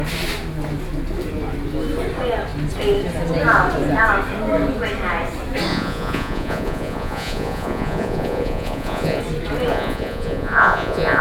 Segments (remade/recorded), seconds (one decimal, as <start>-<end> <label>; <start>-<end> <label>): 0.0-5.7 recorded; 5.7-9.2 remade; 9.2-9.7 recorded; 9.7-11.2 remade